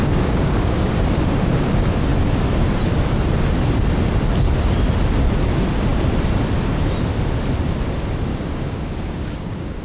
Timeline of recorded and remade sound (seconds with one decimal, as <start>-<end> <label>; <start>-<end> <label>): 0.0-1.0 remade; 1.0-8.3 recorded; 8.3-9.8 remade